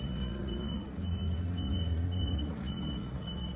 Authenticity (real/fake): fake